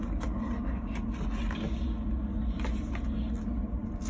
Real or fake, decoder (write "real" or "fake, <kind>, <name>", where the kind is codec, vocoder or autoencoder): real